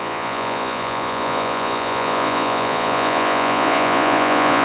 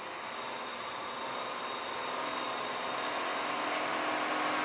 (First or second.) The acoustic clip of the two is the second